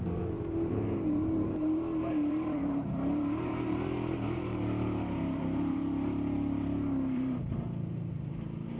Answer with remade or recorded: remade